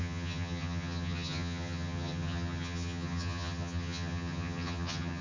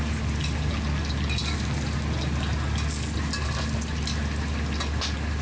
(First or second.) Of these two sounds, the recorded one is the second